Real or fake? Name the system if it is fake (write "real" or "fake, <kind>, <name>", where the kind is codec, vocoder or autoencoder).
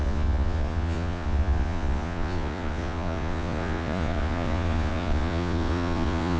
fake, vocoder, Vocos